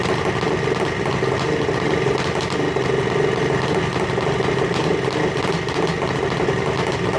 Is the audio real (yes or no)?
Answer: yes